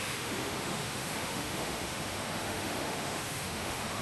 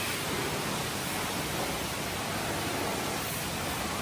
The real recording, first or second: second